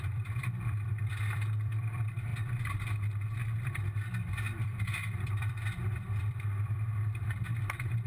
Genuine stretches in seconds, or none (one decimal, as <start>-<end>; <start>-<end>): 2.3-4.3